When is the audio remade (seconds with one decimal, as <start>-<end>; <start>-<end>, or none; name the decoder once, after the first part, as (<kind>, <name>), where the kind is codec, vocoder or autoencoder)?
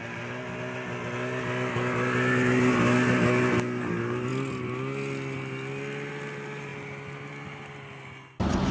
none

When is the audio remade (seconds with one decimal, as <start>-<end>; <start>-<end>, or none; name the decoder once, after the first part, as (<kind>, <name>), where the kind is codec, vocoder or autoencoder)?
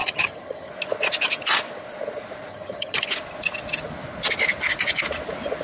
0.0-0.7 (vocoder, HiFi-GAN); 2.5-3.0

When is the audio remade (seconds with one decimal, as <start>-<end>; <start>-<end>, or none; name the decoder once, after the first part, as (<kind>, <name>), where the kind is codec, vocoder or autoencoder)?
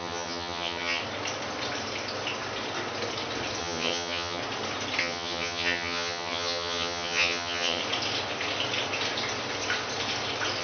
0.0-1.0 (vocoder, HiFi-GAN); 3.6-4.4; 5.0-7.8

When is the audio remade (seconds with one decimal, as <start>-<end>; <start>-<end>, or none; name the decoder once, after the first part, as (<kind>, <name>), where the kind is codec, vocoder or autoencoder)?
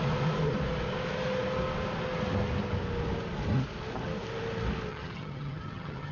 4.9-6.1 (vocoder, HiFi-GAN)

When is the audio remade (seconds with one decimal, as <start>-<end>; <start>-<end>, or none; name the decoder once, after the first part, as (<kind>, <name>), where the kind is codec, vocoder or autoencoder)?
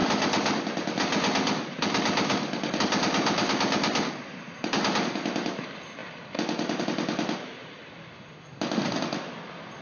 none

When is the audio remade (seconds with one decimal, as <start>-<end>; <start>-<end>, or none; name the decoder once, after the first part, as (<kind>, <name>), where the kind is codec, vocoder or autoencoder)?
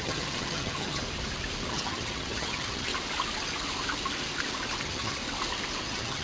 0.0-1.0 (vocoder, HiFi-GAN); 1.7-2.9; 4.8-5.2; 5.8-6.2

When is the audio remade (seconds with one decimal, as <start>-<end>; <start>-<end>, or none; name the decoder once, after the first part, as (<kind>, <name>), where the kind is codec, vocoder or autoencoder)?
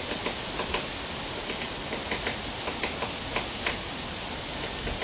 none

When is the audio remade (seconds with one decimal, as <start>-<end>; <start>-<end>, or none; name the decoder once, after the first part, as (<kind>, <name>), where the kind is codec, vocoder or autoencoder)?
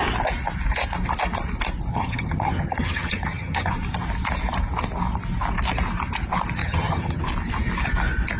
1.9-3.7 (vocoder, HiFi-GAN); 6.6-7.2